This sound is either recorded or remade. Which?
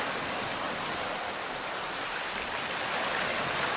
recorded